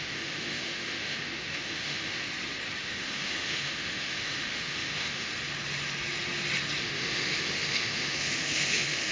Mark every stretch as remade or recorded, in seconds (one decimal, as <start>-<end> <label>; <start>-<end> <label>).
0.0-2.2 remade; 2.2-2.8 recorded; 2.8-5.3 remade; 5.3-6.8 recorded; 6.8-9.1 remade